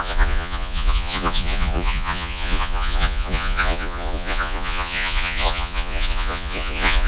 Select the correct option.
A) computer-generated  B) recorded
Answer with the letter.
A